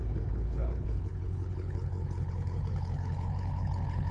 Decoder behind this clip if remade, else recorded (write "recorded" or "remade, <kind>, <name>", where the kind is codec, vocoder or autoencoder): remade, codec, HILCodec